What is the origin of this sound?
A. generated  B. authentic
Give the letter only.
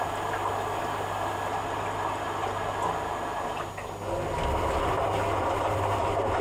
B